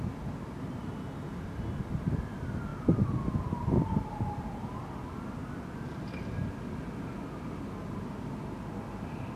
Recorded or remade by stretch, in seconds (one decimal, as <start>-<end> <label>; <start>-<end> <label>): 0.0-9.4 recorded